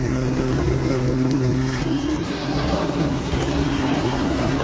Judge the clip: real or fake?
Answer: fake